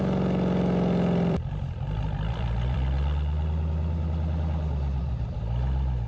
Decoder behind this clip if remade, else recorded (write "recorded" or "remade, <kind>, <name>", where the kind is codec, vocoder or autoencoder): remade, vocoder, BigVGAN v2